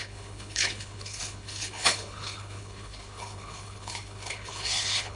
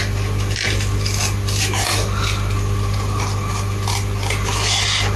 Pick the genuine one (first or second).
second